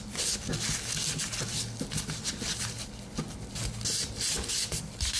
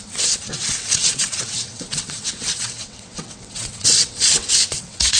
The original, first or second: first